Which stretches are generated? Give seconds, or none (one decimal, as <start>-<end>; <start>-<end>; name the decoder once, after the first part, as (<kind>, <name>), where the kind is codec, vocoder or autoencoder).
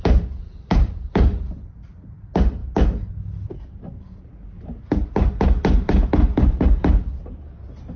0.5-1.6 (vocoder, BigVGAN v2); 5.8-6.6